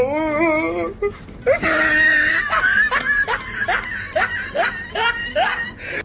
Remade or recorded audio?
recorded